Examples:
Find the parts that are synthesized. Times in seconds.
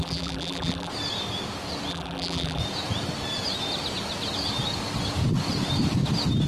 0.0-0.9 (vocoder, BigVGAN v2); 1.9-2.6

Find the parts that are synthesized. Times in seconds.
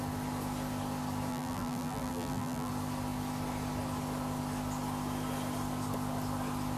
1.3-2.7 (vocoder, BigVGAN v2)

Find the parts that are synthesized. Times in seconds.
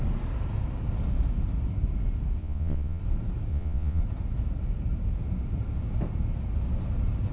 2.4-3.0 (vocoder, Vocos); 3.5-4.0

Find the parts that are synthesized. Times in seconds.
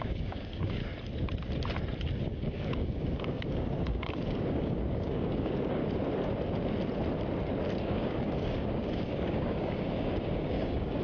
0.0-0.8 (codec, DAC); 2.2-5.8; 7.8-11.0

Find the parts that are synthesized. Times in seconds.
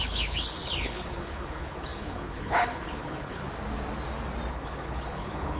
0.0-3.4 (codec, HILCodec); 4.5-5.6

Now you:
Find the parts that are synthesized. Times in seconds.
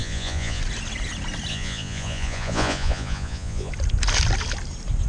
0.0-0.6 (vocoder, Vocos); 1.5-3.7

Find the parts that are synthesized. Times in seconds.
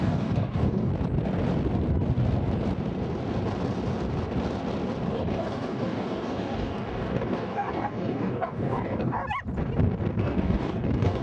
0.0-0.9 (codec, DAC); 5.1-9.2; 10.2-11.2